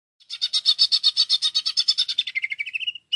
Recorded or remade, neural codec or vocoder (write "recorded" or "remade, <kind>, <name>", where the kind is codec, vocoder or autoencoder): recorded